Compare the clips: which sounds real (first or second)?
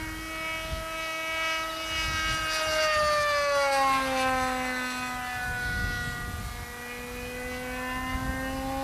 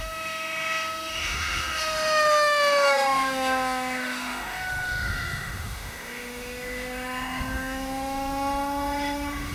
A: first